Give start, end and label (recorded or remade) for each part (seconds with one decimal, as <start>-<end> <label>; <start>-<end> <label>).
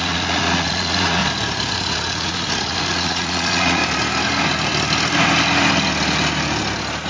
0.0-1.2 remade; 1.2-1.7 recorded; 1.7-3.8 remade; 3.8-7.1 recorded